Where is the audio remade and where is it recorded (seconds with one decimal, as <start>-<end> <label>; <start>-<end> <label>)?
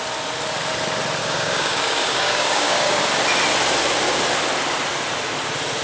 0.0-1.2 recorded; 1.2-3.0 remade; 3.0-5.8 recorded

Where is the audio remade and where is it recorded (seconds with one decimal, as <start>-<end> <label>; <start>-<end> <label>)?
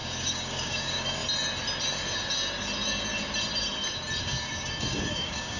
0.0-1.2 remade; 1.2-4.2 recorded; 4.2-5.6 remade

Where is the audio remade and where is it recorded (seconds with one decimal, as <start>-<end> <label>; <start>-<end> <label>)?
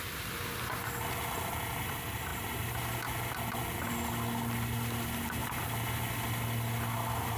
0.0-7.4 recorded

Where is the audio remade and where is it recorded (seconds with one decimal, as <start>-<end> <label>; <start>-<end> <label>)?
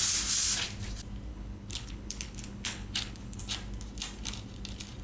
0.0-1.3 recorded; 1.3-3.4 remade; 3.4-5.0 recorded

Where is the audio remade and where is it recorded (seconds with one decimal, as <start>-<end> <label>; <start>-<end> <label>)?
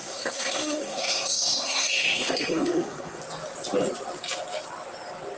0.0-3.2 remade; 3.2-5.4 recorded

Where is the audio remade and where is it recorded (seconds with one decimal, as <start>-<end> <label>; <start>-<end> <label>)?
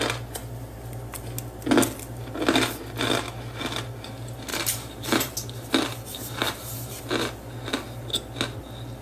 0.0-4.5 recorded; 4.5-5.3 remade; 5.3-6.1 recorded; 6.1-7.0 remade; 7.0-9.0 recorded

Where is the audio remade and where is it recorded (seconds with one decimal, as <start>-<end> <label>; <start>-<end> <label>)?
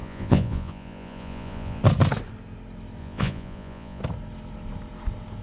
0.0-1.8 remade; 1.8-3.0 recorded; 3.0-4.0 remade; 4.0-5.4 recorded